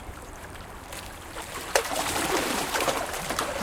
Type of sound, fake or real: fake